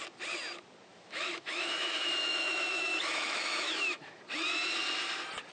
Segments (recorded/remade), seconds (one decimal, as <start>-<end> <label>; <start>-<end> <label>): 0.0-0.9 recorded; 0.9-4.2 remade; 4.2-5.5 recorded